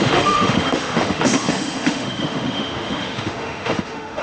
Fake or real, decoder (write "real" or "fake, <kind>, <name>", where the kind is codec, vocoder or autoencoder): fake, autoencoder, DAC-VAE